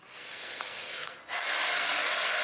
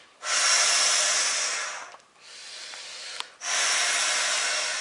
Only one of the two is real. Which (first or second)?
second